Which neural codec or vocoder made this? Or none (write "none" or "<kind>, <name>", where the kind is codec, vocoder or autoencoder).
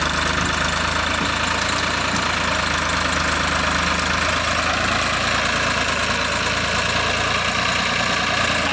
none